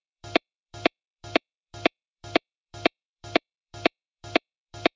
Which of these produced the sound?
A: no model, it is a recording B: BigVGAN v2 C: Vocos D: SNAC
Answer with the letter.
B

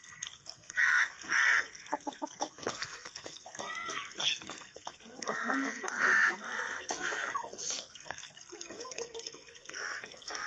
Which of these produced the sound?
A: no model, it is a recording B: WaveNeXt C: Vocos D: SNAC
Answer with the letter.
D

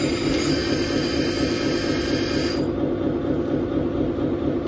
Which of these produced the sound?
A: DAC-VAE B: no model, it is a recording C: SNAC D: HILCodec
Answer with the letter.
B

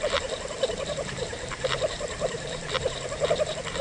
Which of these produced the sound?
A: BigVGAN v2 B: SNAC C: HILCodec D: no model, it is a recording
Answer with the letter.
A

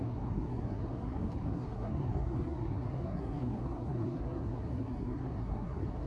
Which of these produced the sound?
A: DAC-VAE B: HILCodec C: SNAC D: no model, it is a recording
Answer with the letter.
C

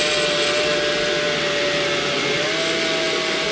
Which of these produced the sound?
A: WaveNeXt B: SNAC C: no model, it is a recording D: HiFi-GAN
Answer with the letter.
C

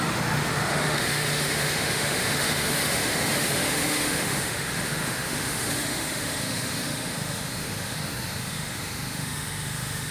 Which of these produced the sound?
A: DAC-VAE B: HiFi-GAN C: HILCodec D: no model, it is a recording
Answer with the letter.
A